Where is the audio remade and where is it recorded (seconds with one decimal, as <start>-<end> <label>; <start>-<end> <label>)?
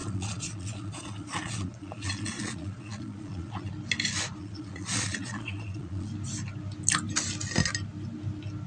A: 0.0-3.7 remade; 3.7-4.4 recorded; 4.4-6.1 remade; 6.1-8.7 recorded